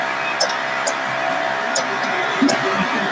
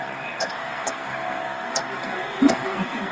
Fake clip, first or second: second